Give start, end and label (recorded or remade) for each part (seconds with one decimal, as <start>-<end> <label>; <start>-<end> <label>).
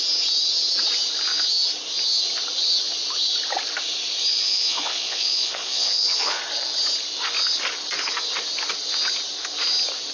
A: 0.0-4.3 recorded; 4.3-6.4 remade; 6.4-10.1 recorded